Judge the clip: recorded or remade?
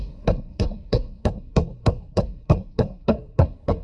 remade